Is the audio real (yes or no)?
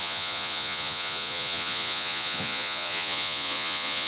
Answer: no